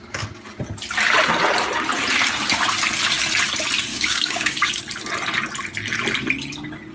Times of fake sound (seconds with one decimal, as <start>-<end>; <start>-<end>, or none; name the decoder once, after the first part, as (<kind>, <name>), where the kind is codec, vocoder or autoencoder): 3.9-4.8 (codec, DAC)